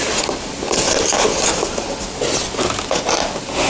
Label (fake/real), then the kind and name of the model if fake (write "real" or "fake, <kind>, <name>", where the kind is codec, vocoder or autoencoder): real